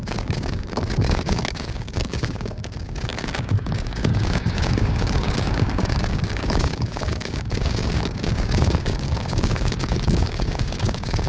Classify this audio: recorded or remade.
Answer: remade